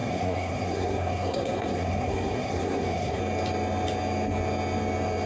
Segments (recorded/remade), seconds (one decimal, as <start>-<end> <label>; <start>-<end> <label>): 0.0-3.2 remade; 3.2-5.3 recorded